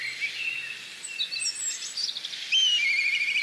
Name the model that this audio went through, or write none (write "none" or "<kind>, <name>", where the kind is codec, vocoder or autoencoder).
none